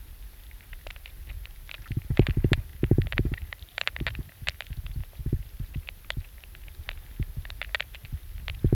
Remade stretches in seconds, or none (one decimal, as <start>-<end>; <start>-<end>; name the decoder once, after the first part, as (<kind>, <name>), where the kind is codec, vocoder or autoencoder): 2.7-3.9 (vocoder, BigVGAN v2)